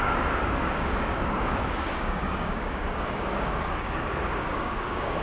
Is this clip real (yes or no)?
no